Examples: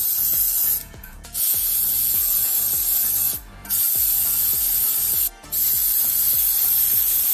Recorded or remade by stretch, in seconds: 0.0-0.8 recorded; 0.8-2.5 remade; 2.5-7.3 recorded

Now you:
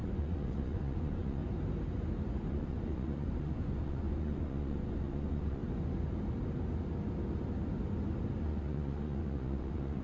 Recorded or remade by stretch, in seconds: 0.0-1.4 remade; 1.4-2.5 recorded; 2.5-5.6 remade; 5.6-8.4 recorded; 8.4-10.0 remade

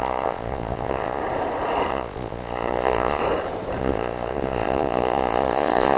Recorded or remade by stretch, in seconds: 0.0-1.2 remade; 1.2-1.9 recorded; 1.9-3.2 remade; 3.2-3.8 recorded; 3.8-6.0 remade

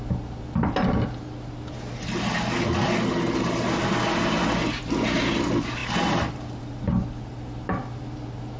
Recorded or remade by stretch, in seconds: 0.0-8.6 recorded

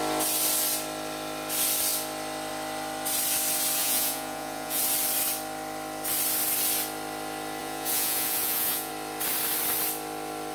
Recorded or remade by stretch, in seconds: 0.0-3.8 recorded; 3.8-4.8 remade; 4.8-7.6 recorded; 7.6-8.9 remade; 8.9-10.5 recorded

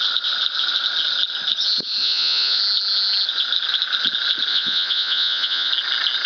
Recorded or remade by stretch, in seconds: 0.0-2.0 recorded; 2.0-2.6 remade; 2.6-4.5 recorded; 4.5-5.7 remade; 5.7-6.3 recorded

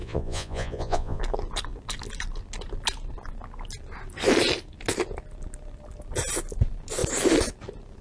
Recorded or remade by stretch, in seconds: 0.0-1.2 remade; 1.2-8.0 recorded